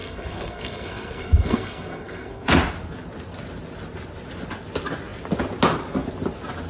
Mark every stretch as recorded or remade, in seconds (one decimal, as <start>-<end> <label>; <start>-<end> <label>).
0.0-2.5 remade; 2.5-6.7 recorded